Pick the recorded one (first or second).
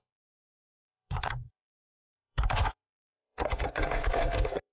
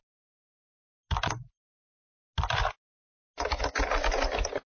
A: second